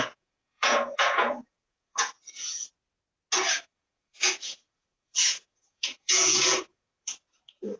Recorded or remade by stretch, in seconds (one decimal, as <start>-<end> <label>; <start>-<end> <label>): 0.0-2.7 remade; 2.7-3.5 recorded; 3.5-7.8 remade